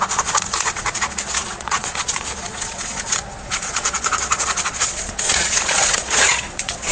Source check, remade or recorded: remade